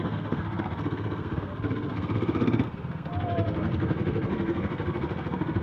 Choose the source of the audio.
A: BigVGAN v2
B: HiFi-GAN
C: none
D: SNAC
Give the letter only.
D